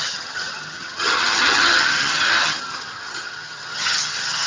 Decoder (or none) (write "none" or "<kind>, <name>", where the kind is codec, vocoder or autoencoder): vocoder, HiFi-GAN